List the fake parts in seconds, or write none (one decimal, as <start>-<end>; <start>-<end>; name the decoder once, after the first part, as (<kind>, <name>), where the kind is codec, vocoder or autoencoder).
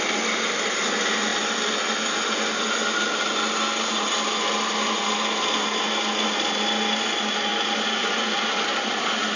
none